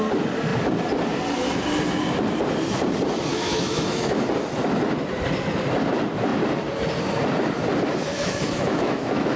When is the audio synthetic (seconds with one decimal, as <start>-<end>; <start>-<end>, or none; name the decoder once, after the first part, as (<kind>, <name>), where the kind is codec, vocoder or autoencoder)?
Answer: 3.3-4.2 (autoencoder, DAC-VAE); 8.1-9.4